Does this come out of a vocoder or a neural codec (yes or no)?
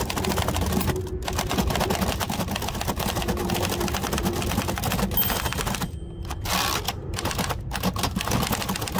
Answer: no